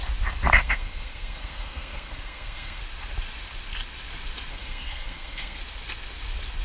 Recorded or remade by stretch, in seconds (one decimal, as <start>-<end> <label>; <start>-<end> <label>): 0.0-0.6 recorded; 0.6-2.8 remade; 2.8-4.5 recorded; 4.5-5.6 remade; 5.6-6.6 recorded